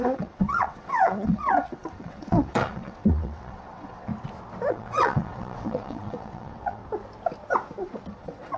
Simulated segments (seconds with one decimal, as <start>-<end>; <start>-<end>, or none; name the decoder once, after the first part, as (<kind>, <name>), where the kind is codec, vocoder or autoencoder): 0.0-4.1 (vocoder, WaveNeXt); 4.7-6.8; 8.2-8.6